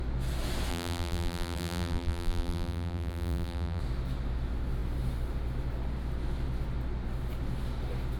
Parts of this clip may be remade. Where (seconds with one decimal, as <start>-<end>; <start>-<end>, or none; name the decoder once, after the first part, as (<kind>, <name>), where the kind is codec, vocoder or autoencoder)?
0.7-3.8 (vocoder, BigVGAN v2)